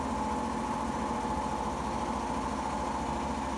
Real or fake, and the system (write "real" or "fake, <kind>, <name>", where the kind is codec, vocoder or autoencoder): real